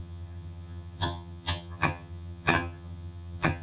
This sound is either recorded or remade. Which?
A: remade